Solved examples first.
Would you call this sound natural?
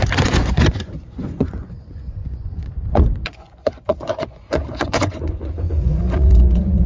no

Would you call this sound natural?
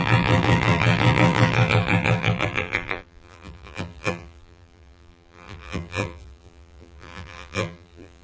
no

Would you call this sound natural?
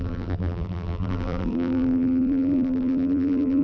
no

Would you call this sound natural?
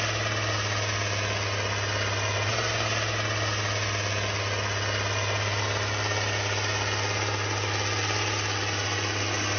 yes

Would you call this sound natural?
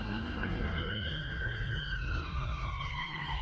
no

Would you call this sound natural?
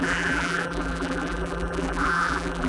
no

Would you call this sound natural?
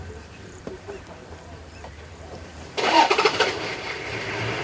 no